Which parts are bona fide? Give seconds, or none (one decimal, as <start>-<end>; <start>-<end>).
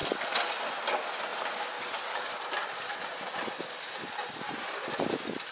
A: 0.0-5.5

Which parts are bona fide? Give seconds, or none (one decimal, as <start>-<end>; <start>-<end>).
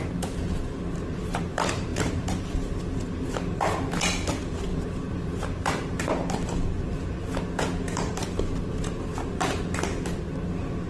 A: 0.0-1.9; 2.8-10.9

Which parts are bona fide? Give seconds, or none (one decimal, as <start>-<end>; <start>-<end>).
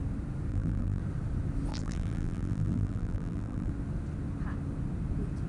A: 0.0-0.5; 1.0-1.7; 3.7-5.5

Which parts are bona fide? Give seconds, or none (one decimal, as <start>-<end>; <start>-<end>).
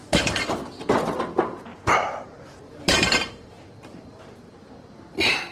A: 1.2-1.7; 4.2-5.5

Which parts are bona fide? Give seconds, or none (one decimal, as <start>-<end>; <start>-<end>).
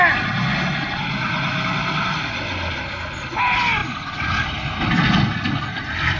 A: 0.0-6.2